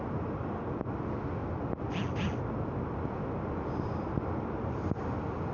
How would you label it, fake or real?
real